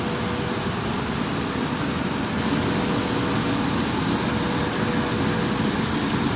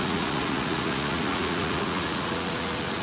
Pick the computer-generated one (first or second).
second